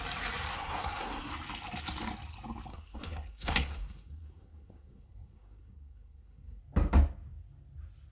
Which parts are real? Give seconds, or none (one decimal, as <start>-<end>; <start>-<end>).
0.0-0.5; 1.3-2.7; 6.6-8.1